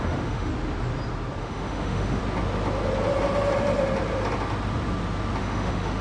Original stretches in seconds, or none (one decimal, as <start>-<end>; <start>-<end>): 0.5-1.4; 2.2-5.4